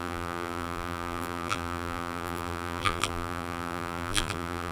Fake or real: fake